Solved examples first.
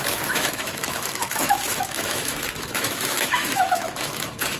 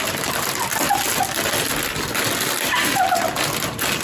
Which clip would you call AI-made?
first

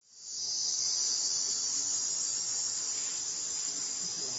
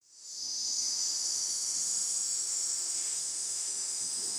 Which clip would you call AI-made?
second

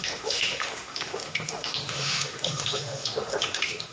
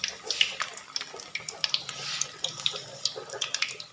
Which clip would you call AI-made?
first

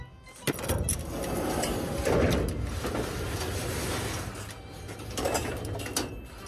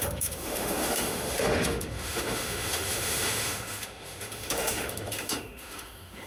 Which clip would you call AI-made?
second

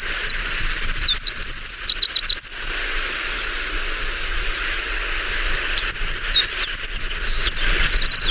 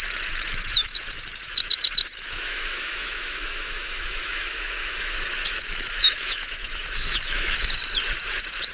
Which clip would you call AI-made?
second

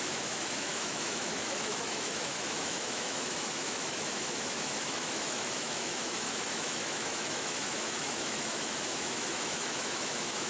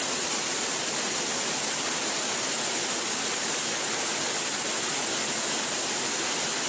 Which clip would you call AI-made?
first